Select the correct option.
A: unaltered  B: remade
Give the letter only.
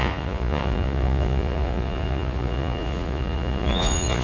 B